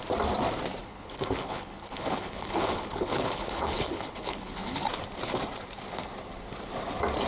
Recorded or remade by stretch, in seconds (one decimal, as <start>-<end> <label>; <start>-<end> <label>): 0.0-0.8 recorded; 0.8-4.8 remade; 4.8-7.3 recorded